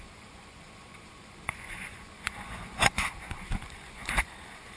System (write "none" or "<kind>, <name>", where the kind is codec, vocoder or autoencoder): vocoder, Vocos